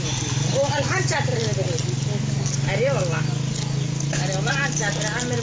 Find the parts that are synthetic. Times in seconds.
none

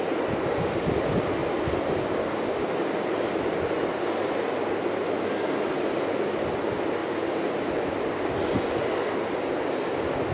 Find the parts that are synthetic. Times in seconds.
1.4-2.7 (vocoder, BigVGAN v2)

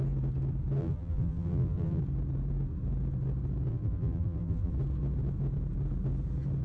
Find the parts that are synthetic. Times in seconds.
0.8-2.0 (vocoder, BigVGAN v2); 3.7-4.7

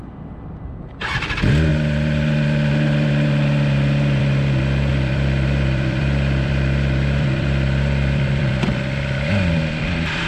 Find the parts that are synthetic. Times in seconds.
4.9-10.3 (vocoder, BigVGAN v2)

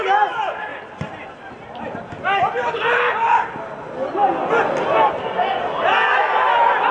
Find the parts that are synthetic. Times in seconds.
0.7-2.7 (vocoder, BigVGAN v2)